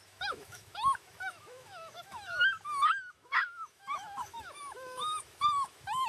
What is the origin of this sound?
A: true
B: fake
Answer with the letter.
B